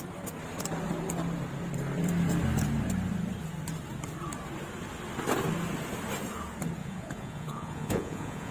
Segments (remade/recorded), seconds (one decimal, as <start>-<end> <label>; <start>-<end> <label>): 0.0-6.8 recorded; 6.8-8.5 remade